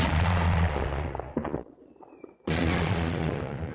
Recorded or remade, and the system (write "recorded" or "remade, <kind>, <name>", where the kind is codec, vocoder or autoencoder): remade, vocoder, Vocos